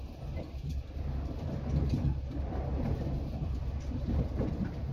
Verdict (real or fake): real